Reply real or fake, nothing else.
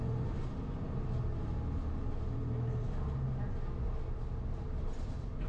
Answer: real